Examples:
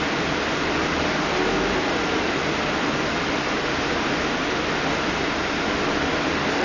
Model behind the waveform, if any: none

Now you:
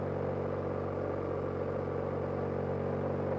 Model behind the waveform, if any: none